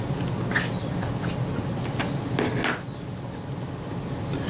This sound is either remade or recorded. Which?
recorded